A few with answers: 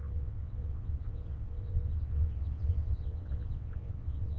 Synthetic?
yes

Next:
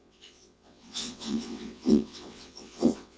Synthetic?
yes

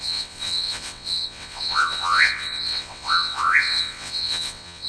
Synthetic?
yes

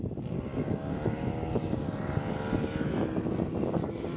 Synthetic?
no